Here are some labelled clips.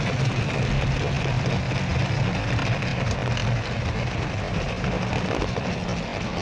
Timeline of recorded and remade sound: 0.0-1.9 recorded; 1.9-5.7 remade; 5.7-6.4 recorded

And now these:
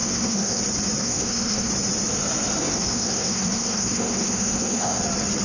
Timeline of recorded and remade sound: 0.0-0.6 remade; 0.6-1.0 recorded; 1.0-1.7 remade; 1.7-2.6 recorded; 2.6-5.0 remade; 5.0-5.4 recorded

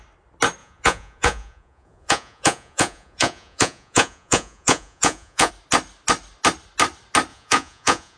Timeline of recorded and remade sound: 0.0-0.6 recorded; 0.6-5.5 remade; 5.5-7.3 recorded; 7.3-8.2 remade

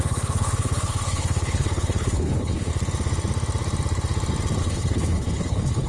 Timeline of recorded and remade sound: 0.0-2.7 remade; 2.7-4.6 recorded; 4.6-5.9 remade